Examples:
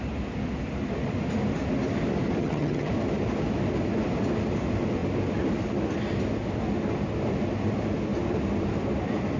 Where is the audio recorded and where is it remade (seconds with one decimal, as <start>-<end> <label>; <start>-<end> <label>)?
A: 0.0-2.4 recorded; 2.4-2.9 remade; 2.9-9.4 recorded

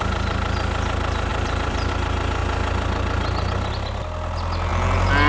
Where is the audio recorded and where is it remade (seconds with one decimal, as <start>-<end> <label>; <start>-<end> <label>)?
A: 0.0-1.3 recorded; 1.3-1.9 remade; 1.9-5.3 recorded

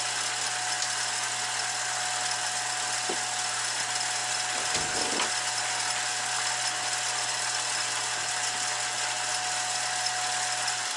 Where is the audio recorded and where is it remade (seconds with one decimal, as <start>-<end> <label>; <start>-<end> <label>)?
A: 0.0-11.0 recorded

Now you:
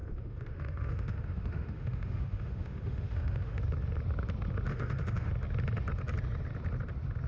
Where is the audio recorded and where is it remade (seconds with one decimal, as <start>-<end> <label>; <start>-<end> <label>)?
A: 0.0-3.6 remade; 3.6-4.7 recorded; 4.7-5.3 remade; 5.3-7.3 recorded

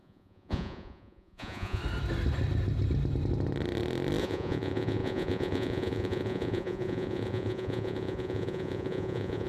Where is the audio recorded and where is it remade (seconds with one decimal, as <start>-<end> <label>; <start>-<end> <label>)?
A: 0.0-1.8 remade; 1.8-4.2 recorded; 4.2-9.5 remade

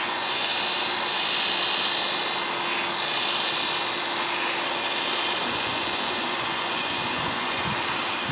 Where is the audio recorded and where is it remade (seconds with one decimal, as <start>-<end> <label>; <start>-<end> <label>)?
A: 0.0-0.5 remade; 0.5-5.5 recorded; 5.5-7.7 remade; 7.7-8.3 recorded

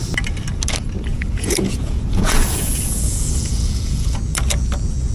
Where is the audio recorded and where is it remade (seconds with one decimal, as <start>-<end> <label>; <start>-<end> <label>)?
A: 0.0-1.1 recorded; 1.1-4.2 remade; 4.2-5.1 recorded

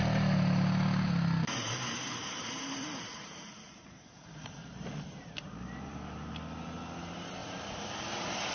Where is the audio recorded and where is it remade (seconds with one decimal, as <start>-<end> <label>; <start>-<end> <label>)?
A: 0.0-2.2 recorded; 2.2-6.3 remade; 6.3-7.4 recorded; 7.4-7.9 remade; 7.9-8.5 recorded